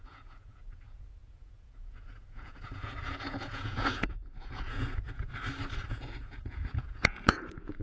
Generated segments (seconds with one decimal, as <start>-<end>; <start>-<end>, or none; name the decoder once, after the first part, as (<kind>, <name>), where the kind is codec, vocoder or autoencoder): 0.0-5.3 (vocoder, Vocos); 5.9-7.8